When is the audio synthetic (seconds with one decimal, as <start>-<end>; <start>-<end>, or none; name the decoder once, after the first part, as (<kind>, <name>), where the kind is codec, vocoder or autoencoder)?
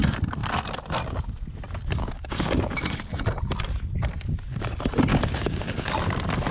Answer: 2.0-2.9 (codec, DAC); 5.1-5.9